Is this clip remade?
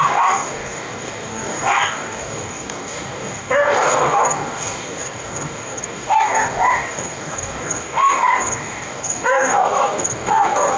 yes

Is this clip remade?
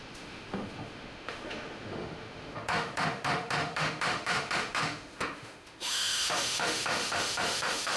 yes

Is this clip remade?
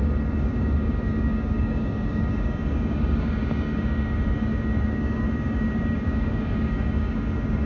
yes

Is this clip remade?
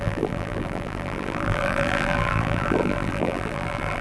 yes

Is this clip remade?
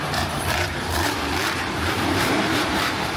yes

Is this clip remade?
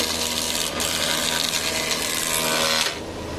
no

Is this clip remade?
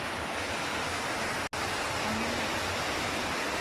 no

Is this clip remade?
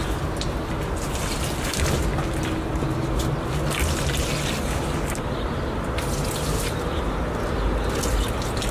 no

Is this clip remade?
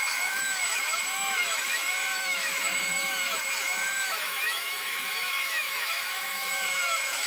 yes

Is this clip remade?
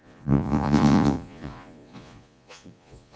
yes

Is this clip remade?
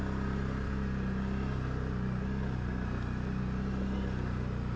no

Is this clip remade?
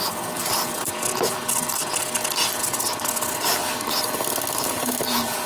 no